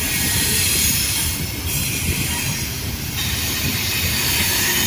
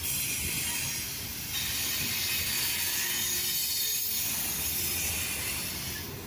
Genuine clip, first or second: second